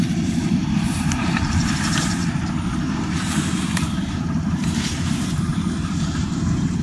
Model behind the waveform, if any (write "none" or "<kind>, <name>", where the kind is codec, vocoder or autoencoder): vocoder, BigVGAN v2